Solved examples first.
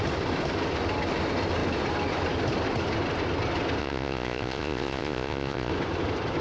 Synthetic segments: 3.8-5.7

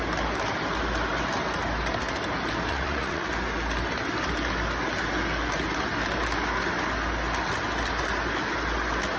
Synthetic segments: 2.7-3.3

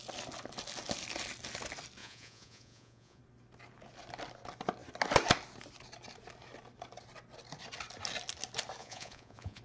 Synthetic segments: 2.0-3.2; 8.8-9.6

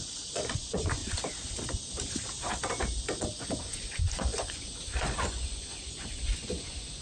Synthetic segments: 0.0-1.0; 3.2-7.0

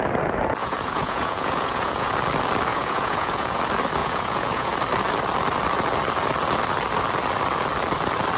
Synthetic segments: 0.6-2.1; 2.7-3.6; 4.0-4.7

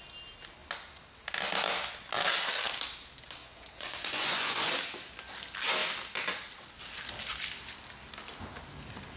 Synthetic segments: 3.4-4.7

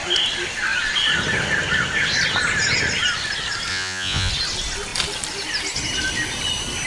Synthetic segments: 3.7-4.3